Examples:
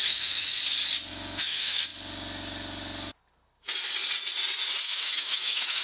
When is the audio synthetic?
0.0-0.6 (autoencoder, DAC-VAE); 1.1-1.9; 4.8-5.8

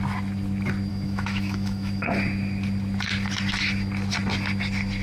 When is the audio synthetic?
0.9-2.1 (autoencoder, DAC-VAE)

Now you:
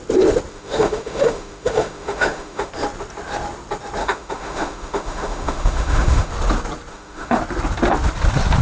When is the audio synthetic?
0.5-2.7 (autoencoder, DAC-VAE); 4.0-6.3; 6.9-7.4

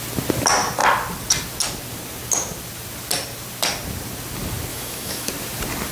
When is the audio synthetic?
4.7-5.3 (autoencoder, DAC-VAE)

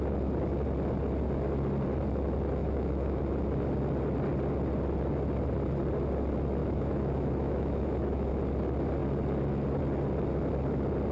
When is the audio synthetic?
2.6-3.2 (autoencoder, DAC-VAE); 6.6-8.3